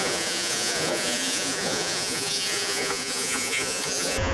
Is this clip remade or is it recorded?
remade